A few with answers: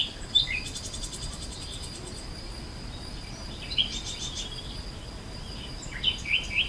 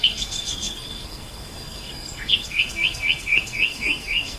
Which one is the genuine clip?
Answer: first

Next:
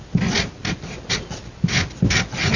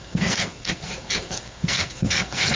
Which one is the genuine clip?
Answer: first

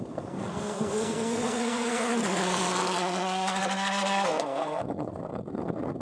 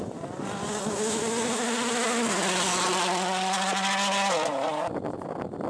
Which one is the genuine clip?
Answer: second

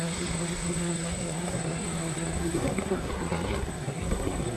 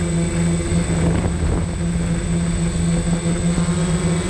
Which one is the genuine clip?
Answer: second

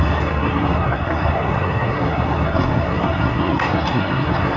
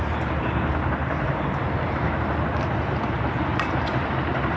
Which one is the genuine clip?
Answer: second